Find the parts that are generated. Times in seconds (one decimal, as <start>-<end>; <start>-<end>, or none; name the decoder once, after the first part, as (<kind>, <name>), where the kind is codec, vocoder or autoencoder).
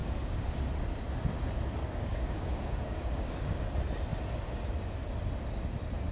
0.0-0.6 (codec, DAC); 1.8-3.6